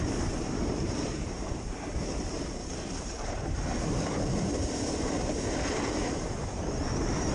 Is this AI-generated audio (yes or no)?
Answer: yes